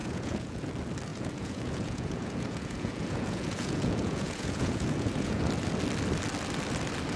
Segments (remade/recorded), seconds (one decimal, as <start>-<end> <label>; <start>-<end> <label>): 0.0-0.7 remade; 0.7-1.1 recorded; 1.1-5.4 remade; 5.4-7.2 recorded